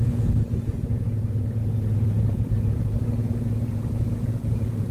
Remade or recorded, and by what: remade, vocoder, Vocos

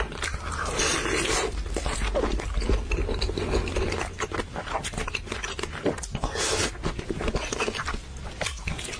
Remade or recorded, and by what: recorded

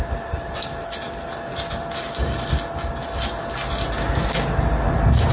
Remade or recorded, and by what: recorded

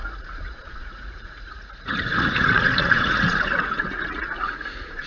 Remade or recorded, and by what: remade, vocoder, Vocos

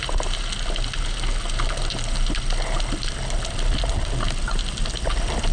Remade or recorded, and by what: recorded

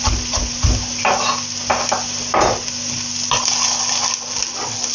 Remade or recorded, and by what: recorded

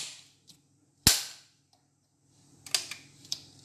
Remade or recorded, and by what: recorded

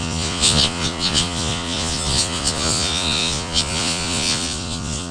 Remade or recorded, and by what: remade, vocoder, Vocos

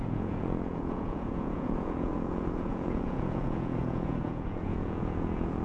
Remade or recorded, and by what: remade, vocoder, Vocos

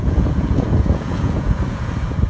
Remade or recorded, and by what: remade, vocoder, Vocos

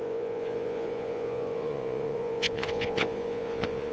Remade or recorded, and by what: remade, vocoder, Vocos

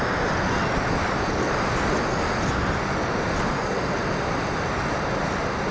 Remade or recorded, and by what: recorded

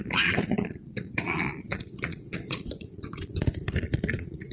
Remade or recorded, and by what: remade, vocoder, Vocos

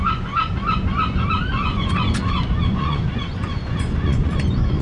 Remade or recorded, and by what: remade, vocoder, Vocos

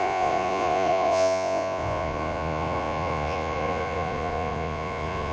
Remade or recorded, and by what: remade, vocoder, Vocos